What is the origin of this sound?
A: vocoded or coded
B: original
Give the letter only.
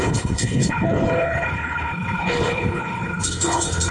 A